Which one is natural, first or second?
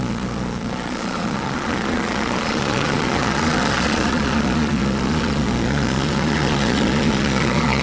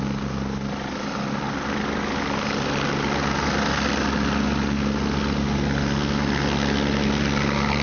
second